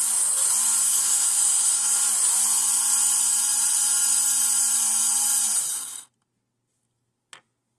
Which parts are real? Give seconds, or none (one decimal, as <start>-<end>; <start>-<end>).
0.0-0.8; 2.0-7.8